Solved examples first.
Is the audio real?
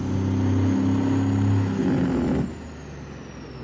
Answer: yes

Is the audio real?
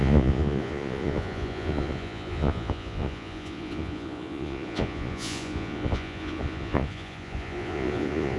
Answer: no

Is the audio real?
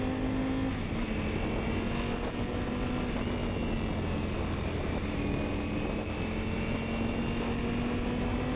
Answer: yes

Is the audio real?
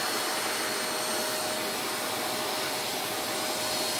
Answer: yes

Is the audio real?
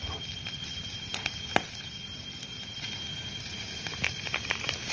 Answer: yes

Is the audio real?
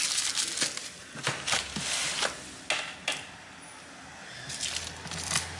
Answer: yes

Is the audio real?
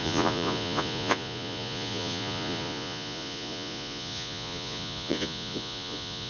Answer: no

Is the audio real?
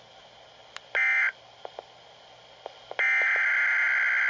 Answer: yes